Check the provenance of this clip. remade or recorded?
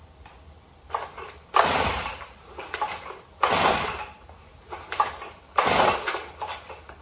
remade